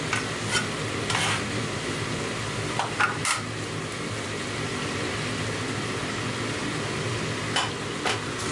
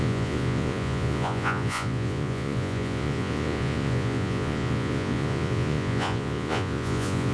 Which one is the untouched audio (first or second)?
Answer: first